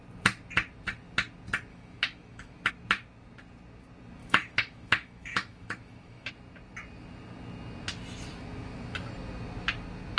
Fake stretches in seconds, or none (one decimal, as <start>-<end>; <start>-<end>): 1.7-2.7; 4.2-6.3